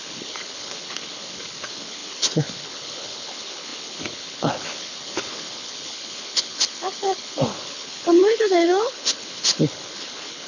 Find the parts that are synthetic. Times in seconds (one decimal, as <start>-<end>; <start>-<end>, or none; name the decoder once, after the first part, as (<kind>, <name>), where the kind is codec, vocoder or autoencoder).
0.0-10.5 (codec, HILCodec)

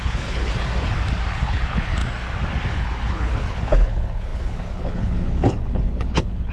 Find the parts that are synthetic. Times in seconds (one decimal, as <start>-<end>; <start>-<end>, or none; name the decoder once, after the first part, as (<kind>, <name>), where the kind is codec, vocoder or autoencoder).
0.0-0.7 (codec, HILCodec); 1.3-2.0; 2.7-6.5

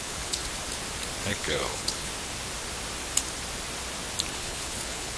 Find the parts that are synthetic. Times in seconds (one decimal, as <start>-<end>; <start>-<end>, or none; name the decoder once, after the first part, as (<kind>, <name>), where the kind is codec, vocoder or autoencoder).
0.0-0.4 (codec, HILCodec); 1.3-2.1; 4.3-5.2

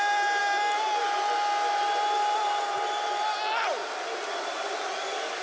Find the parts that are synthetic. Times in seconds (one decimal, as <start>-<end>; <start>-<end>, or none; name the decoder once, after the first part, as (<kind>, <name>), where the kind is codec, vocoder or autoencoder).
none

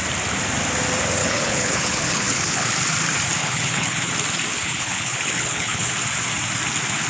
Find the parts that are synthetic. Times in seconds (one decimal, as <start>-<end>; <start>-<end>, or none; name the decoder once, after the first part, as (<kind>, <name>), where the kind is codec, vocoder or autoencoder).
1.2-2.7 (codec, HILCodec); 3.4-4.1; 4.5-5.9

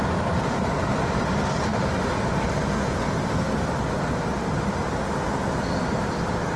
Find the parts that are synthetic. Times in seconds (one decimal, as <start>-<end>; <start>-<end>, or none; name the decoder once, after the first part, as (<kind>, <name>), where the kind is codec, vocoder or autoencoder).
none